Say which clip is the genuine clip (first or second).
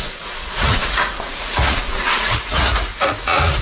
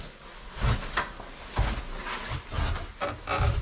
second